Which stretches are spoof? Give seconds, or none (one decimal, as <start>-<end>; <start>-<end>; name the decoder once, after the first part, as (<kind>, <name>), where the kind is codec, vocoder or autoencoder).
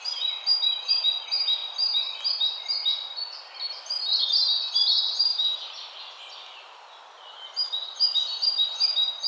none